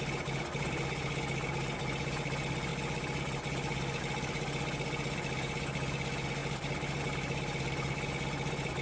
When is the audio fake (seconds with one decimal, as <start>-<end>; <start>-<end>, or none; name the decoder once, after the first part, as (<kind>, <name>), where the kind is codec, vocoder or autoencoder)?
none